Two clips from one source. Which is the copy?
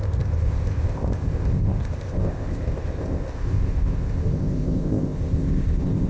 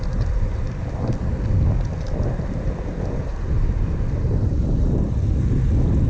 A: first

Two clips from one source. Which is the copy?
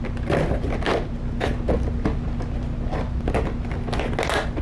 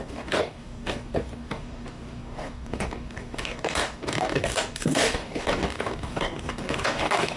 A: second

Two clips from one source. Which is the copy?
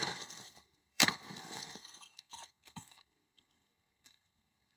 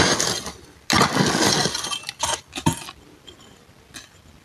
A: first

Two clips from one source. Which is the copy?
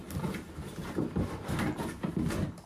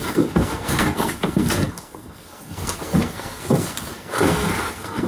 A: second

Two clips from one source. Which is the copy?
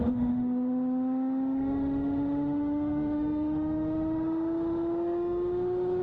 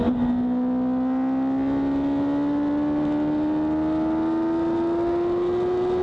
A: first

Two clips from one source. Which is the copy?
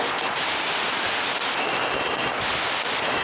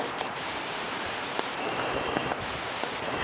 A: second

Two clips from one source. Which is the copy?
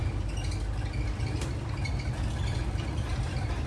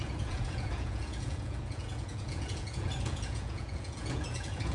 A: second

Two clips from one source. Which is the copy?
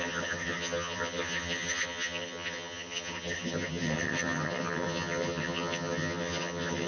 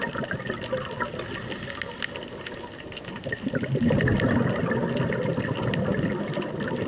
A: first